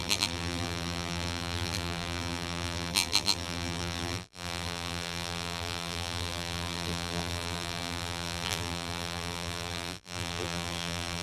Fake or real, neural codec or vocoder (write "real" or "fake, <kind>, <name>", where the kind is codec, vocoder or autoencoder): fake, vocoder, BigVGAN v2